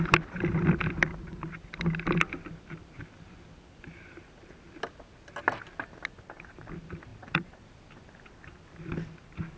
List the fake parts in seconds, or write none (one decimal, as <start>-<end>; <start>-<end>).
none